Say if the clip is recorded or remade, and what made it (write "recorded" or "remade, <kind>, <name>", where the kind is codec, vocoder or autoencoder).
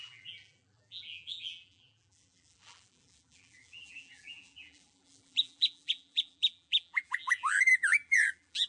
remade, vocoder, BigVGAN v2